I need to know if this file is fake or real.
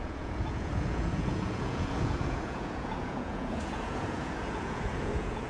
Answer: fake